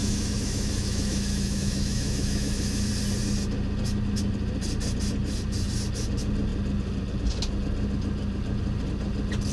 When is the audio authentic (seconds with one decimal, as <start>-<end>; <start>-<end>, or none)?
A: 2.9-9.5